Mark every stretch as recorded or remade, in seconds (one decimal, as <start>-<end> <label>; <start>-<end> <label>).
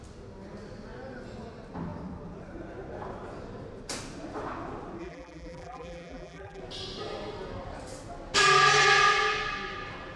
0.0-5.0 recorded; 5.0-6.6 remade; 6.6-10.2 recorded